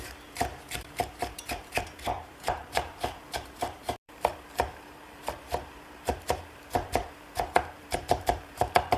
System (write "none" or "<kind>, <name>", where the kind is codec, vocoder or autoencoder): vocoder, BigVGAN v2